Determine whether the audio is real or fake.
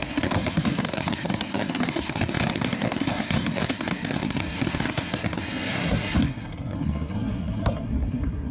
fake